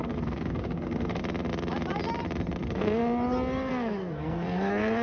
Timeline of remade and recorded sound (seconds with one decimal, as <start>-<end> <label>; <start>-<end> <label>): 0.0-1.2 remade; 1.2-2.6 recorded; 2.6-3.0 remade; 3.0-3.7 recorded; 3.7-5.0 remade